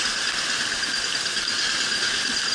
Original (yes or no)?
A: yes